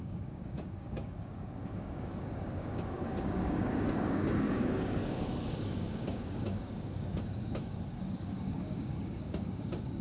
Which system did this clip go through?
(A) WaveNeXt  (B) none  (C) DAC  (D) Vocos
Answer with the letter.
C